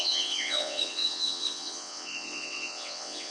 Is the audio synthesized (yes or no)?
yes